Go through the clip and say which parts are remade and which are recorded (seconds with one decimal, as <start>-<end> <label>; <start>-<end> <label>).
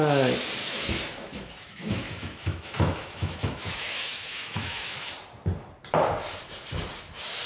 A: 0.0-0.6 recorded; 0.6-5.1 remade; 5.1-7.5 recorded